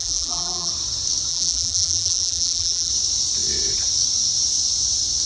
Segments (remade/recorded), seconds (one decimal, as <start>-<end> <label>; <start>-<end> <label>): 0.0-0.7 remade; 0.7-1.3 recorded; 1.3-2.9 remade; 2.9-5.3 recorded